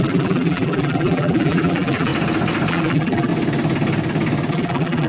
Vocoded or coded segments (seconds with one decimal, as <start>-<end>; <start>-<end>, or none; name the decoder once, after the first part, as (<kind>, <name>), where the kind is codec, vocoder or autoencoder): 0.0-2.1 (vocoder, BigVGAN v2); 2.7-3.3; 4.5-5.1